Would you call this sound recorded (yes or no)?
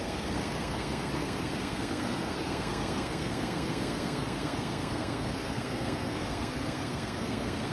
no